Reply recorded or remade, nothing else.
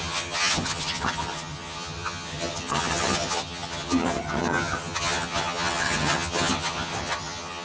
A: remade